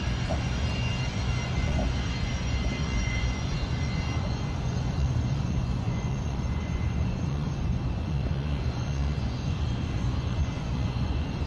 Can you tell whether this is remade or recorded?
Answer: remade